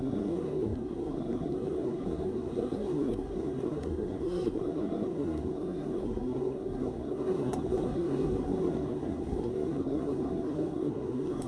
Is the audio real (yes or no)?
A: no